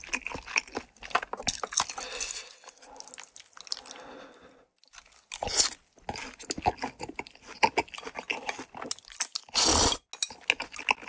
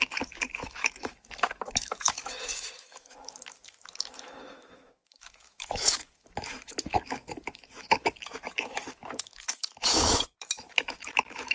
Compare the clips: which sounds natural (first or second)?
first